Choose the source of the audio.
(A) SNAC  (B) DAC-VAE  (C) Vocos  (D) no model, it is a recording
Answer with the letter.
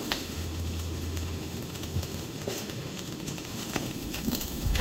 B